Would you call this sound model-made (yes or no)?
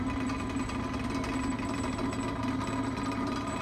no